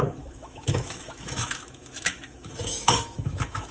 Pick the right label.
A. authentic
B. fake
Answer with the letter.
B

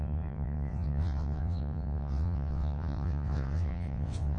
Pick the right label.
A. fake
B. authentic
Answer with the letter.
A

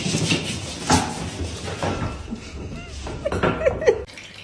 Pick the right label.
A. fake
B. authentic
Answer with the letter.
B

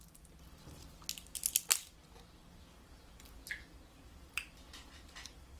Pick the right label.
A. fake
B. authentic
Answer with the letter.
B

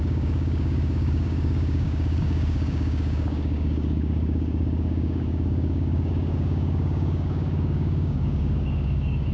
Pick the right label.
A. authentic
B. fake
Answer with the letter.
B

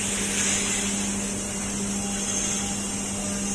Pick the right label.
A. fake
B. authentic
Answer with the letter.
B